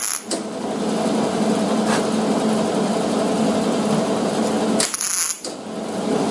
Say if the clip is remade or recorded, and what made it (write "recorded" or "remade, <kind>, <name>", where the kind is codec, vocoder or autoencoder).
recorded